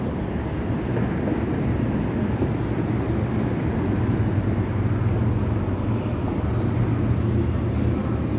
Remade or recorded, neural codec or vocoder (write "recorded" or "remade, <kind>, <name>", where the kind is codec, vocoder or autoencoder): recorded